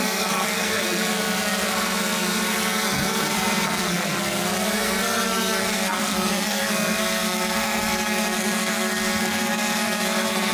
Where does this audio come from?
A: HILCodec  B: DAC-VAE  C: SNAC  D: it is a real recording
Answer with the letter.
C